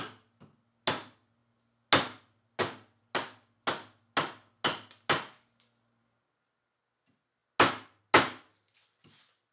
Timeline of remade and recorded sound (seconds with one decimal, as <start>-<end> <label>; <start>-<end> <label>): 0.0-9.5 recorded